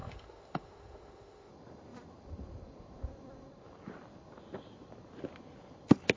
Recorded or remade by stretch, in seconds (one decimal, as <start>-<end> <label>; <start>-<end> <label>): 0.0-1.5 remade; 1.5-6.2 recorded